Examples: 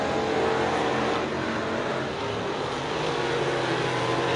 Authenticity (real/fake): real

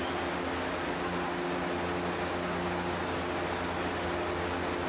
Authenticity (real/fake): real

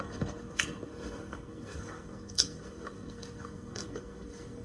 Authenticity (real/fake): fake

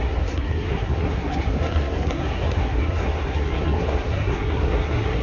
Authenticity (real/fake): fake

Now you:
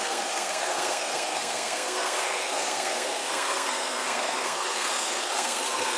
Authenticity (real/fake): fake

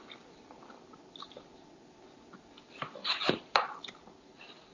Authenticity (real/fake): real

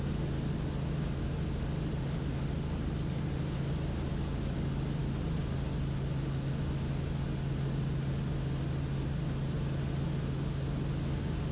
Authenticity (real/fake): real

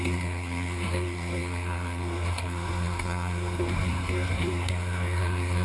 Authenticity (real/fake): fake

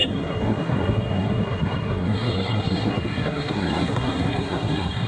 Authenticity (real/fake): fake